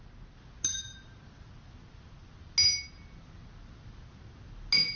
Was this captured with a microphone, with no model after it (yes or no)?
yes